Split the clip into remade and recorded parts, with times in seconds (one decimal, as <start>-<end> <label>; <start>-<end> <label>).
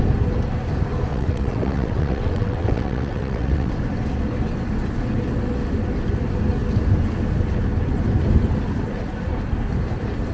0.0-1.1 recorded; 1.1-3.7 remade; 3.7-10.3 recorded